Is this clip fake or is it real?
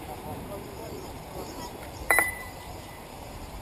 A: fake